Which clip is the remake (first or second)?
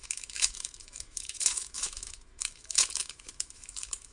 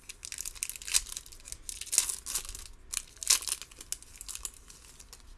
first